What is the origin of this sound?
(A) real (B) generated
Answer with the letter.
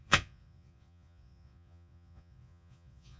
B